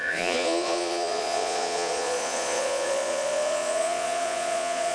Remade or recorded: remade